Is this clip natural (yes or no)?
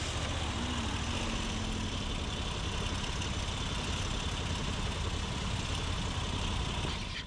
yes